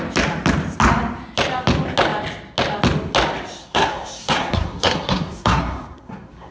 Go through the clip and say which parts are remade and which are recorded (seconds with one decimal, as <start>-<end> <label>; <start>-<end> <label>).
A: 0.0-3.6 recorded; 3.6-6.5 remade